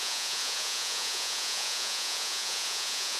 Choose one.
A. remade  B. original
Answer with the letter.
A